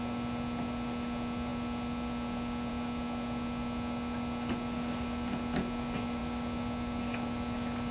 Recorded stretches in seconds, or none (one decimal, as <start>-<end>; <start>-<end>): 0.0-7.9